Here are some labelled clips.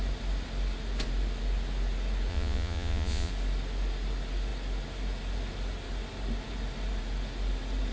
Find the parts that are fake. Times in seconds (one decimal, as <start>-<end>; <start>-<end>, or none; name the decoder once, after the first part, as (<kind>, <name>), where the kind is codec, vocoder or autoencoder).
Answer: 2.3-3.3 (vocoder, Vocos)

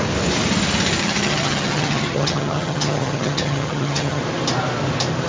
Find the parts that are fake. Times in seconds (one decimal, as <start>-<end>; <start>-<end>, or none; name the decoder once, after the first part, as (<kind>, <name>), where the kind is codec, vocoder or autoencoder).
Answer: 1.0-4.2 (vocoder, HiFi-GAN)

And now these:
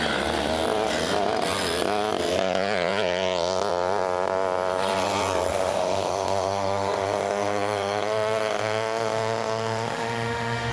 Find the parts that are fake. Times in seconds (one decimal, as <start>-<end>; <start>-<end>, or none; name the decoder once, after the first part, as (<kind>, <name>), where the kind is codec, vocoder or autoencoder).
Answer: 5.5-10.7 (autoencoder, DAC-VAE)